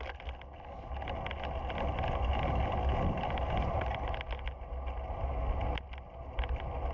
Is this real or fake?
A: real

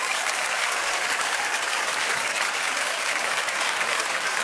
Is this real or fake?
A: fake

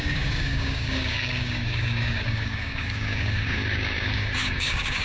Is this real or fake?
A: fake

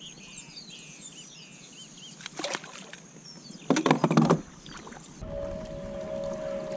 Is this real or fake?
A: real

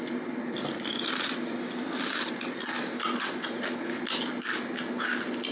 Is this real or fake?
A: real